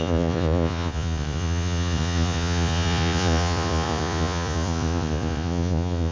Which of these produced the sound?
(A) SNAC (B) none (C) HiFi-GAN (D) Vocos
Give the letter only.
D